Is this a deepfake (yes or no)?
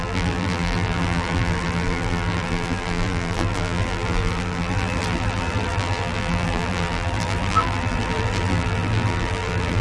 yes